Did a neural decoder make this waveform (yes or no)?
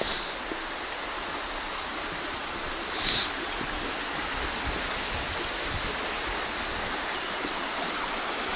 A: no